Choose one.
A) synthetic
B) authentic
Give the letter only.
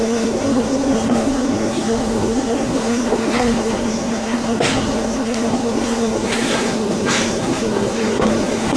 A